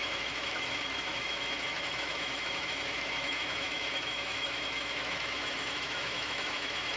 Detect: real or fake fake